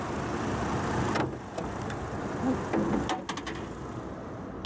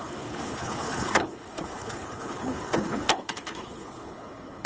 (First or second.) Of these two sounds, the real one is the first